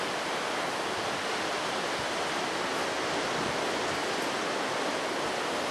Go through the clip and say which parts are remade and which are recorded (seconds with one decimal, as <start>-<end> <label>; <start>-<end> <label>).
0.0-5.7 recorded